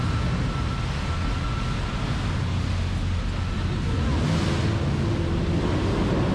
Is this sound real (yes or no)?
yes